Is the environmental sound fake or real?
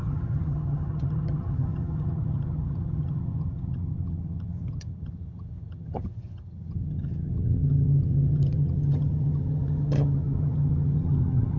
fake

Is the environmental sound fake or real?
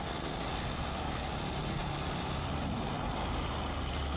real